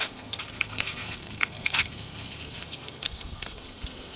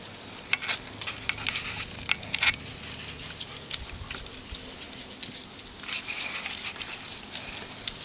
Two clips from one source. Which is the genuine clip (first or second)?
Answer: second